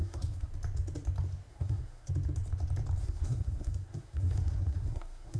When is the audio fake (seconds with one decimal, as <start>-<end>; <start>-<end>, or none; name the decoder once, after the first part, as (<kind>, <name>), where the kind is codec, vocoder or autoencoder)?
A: 0.0-0.5 (codec, SNAC); 1.5-2.1; 3.0-5.4